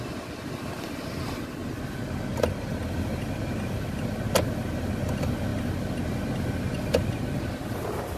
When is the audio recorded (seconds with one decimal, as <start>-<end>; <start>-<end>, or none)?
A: 0.0-8.2